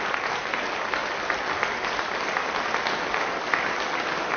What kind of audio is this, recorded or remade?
recorded